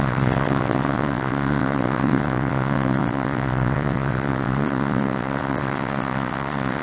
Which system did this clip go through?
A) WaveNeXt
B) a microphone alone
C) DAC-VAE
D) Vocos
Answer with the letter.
A